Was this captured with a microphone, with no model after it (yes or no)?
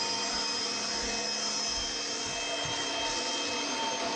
yes